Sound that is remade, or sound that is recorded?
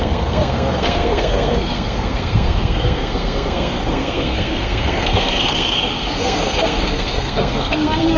remade